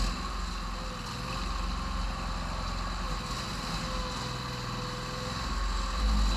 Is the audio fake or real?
real